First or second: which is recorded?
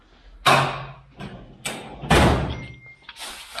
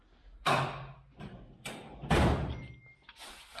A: first